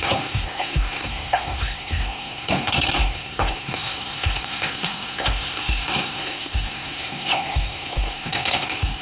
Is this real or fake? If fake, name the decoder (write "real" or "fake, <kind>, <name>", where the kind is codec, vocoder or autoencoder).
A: fake, codec, SNAC